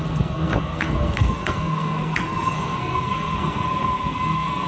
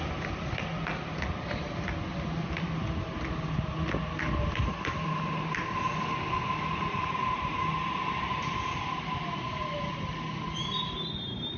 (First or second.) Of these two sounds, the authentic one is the second